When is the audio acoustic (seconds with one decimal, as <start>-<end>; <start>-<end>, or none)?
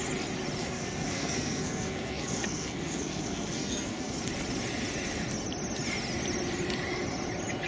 0.0-0.6; 4.2-7.7